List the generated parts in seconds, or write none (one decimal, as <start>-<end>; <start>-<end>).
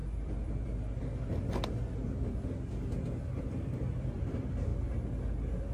3.4-4.7